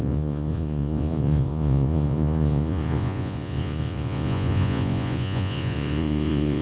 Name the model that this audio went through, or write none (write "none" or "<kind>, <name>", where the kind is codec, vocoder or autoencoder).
vocoder, Vocos